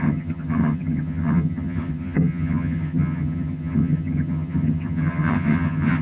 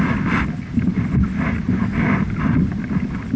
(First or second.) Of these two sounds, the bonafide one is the second